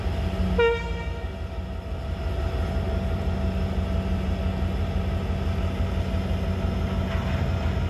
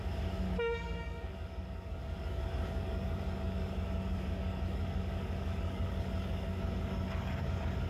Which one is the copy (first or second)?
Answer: second